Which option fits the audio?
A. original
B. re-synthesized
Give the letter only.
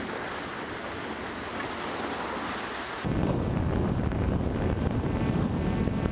A